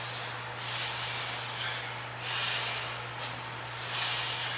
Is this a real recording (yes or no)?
yes